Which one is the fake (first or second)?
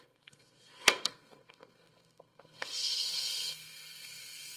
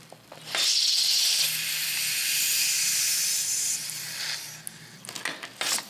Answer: first